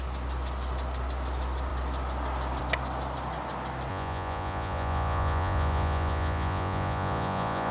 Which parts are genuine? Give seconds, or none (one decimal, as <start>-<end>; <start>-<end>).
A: 0.0-3.9